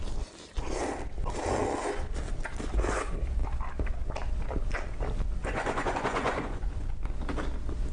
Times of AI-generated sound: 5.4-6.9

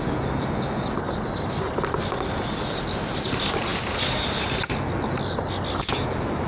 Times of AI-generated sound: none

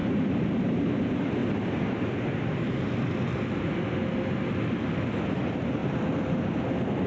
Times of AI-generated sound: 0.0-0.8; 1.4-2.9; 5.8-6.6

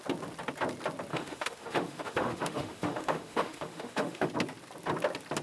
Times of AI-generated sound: 1.1-4.3

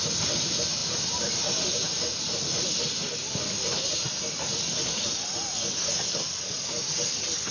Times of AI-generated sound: none